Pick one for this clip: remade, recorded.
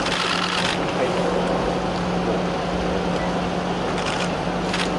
recorded